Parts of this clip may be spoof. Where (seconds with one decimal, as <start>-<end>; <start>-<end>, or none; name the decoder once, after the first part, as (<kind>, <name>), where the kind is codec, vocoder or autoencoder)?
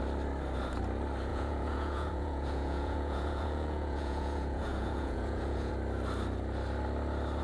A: 1.3-5.7 (vocoder, Vocos)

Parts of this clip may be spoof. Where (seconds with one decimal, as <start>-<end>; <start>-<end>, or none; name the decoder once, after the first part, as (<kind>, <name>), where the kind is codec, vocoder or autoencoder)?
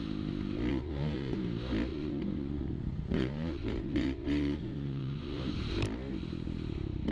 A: 0.7-1.4 (vocoder, Vocos); 1.9-5.4